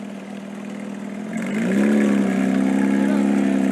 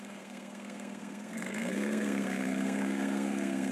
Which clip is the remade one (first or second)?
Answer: second